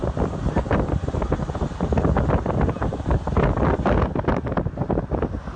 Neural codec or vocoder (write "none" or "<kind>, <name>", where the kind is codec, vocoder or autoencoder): vocoder, BigVGAN v2